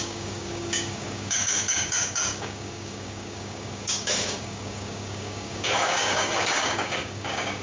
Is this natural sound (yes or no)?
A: no